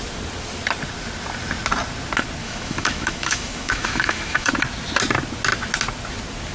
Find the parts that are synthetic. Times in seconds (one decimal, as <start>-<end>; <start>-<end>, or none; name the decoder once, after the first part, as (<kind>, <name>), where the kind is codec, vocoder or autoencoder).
2.4-4.5 (autoencoder, DAC-VAE)